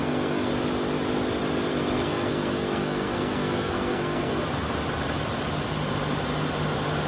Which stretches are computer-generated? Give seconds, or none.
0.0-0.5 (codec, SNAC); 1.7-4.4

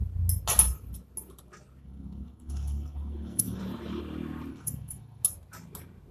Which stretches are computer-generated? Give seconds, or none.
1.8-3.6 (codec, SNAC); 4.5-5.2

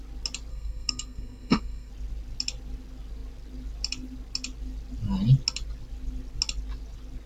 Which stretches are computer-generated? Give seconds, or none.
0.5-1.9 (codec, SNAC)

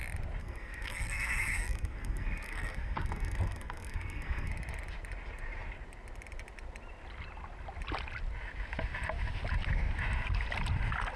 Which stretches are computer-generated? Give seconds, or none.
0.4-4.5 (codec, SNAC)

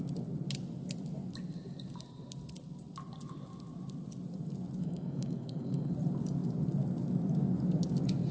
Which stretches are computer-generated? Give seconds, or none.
4.8-5.9 (codec, SNAC)

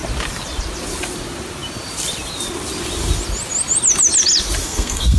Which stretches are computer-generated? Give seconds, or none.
4.6-5.2 (codec, SNAC)

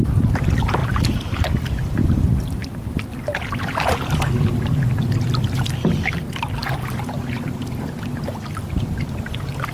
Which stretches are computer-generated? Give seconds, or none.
none